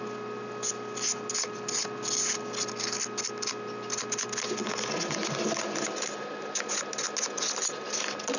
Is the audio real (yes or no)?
yes